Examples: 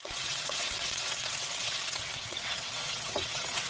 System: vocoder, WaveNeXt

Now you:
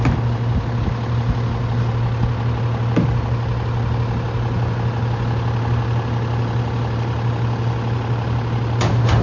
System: none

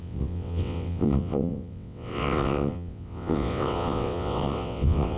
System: vocoder, WaveNeXt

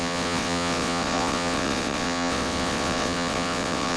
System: vocoder, WaveNeXt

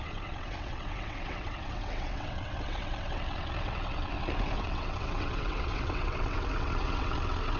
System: vocoder, WaveNeXt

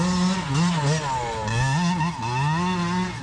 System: none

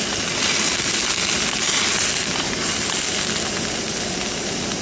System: none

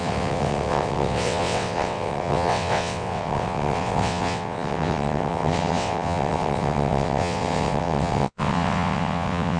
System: vocoder, WaveNeXt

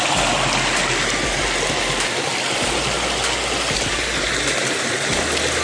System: none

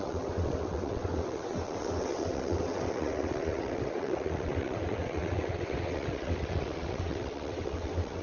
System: vocoder, WaveNeXt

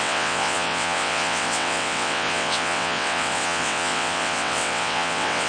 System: vocoder, WaveNeXt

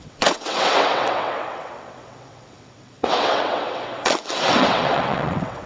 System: vocoder, WaveNeXt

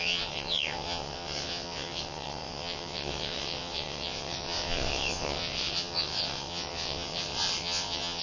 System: vocoder, WaveNeXt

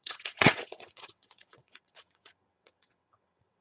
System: vocoder, WaveNeXt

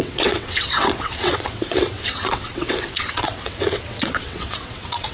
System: vocoder, WaveNeXt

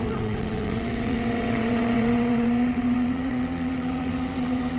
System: vocoder, WaveNeXt